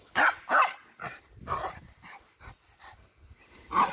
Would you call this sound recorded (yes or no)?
no